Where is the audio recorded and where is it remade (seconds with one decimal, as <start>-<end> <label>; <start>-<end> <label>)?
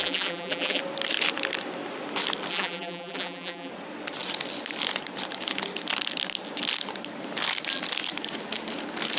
0.0-0.8 remade; 0.8-2.5 recorded; 2.5-3.7 remade; 3.7-9.2 recorded